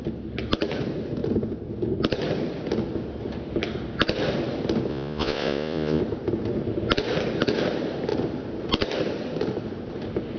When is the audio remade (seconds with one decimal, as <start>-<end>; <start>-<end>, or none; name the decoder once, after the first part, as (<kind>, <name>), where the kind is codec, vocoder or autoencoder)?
4.9-6.0 (vocoder, Vocos)